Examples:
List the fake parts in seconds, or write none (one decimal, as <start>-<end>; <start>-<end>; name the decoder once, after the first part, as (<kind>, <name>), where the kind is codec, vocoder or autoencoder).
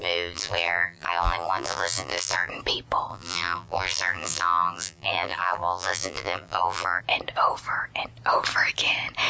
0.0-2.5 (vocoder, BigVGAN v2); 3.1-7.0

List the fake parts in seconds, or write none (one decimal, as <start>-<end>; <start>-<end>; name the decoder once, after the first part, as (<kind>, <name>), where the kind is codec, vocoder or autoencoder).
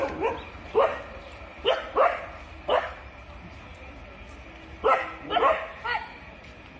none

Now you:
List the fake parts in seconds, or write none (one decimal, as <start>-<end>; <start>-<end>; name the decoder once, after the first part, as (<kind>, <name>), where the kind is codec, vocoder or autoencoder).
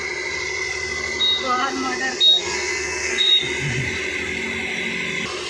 2.4-3.3 (codec, SNAC)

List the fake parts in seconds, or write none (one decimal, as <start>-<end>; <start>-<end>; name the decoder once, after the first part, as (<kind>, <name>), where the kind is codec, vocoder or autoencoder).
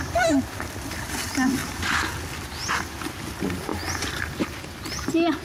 none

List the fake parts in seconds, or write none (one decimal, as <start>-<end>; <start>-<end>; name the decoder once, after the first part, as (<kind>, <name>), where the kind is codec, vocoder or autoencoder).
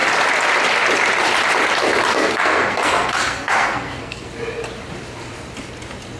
2.1-4.3 (codec, SNAC)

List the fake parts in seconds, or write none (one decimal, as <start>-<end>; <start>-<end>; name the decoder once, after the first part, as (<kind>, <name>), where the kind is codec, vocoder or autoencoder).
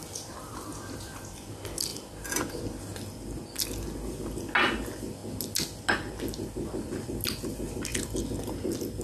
none